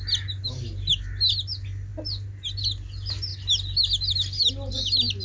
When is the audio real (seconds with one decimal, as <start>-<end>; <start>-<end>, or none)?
0.0-5.2